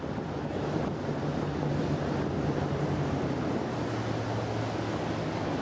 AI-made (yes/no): no